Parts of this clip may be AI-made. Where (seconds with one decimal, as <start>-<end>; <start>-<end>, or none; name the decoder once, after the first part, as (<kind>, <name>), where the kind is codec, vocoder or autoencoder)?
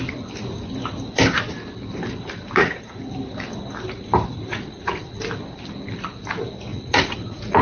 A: 2.6-3.1 (vocoder, Vocos); 4.5-5.2; 6.7-7.6